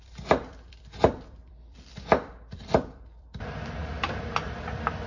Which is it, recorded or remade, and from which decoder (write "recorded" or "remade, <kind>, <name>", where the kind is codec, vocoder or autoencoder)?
remade, vocoder, BigVGAN v2